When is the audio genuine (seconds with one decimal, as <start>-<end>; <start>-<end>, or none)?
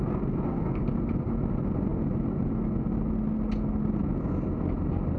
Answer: 0.0-5.2